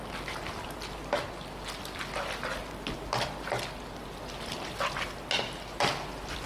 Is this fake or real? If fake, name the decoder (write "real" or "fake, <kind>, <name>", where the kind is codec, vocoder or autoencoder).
real